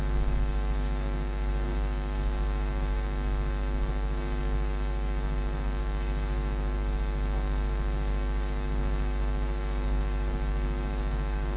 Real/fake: fake